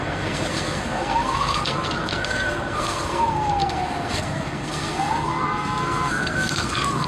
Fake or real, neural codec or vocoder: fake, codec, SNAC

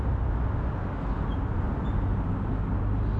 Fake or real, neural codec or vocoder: real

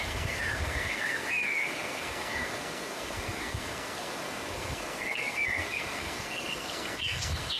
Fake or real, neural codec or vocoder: fake, codec, SNAC